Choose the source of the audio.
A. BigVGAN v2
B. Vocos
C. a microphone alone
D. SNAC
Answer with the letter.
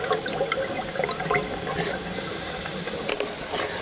C